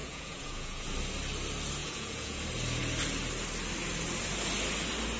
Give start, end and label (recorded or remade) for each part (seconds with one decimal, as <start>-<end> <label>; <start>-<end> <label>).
0.0-0.9 remade; 0.9-1.8 recorded; 1.8-2.4 remade; 2.4-5.2 recorded